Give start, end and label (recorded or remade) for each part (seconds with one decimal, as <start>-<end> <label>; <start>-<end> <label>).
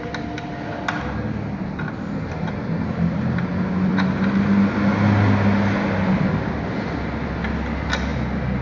0.0-8.6 recorded